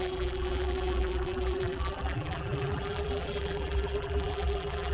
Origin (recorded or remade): remade